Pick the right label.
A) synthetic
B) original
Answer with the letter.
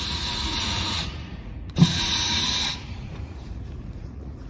A